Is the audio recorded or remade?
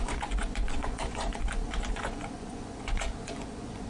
remade